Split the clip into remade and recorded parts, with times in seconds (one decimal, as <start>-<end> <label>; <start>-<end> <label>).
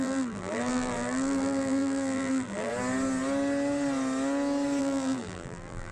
0.0-2.7 remade; 2.7-4.8 recorded; 4.8-5.9 remade